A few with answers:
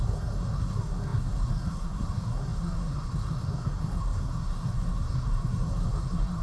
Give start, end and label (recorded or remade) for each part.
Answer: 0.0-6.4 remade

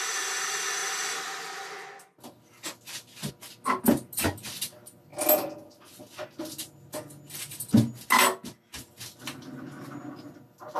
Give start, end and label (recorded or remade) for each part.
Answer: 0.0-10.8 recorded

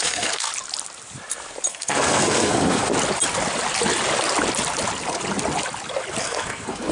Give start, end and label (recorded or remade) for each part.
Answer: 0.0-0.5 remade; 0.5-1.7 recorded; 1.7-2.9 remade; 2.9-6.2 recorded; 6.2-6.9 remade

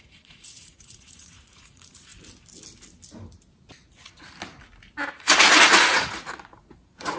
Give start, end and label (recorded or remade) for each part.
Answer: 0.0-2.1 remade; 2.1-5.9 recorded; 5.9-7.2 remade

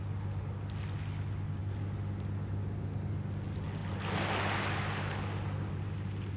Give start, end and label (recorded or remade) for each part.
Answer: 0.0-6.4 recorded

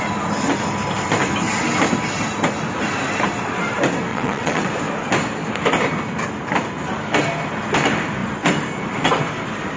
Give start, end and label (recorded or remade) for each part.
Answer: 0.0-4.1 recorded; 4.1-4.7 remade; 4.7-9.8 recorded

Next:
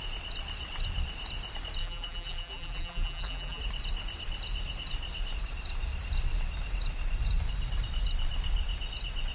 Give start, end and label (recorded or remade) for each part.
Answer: 0.0-1.8 recorded; 1.8-3.6 remade; 3.6-9.3 recorded

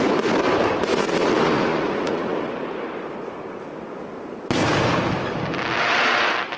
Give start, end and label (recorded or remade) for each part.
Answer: 0.0-0.9 recorded; 0.9-2.5 remade; 2.5-6.6 recorded